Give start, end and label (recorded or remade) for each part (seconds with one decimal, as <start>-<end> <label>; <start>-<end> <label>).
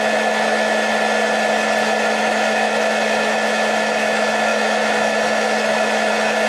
0.0-0.9 remade; 0.9-2.2 recorded; 2.2-6.5 remade